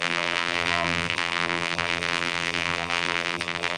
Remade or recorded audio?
remade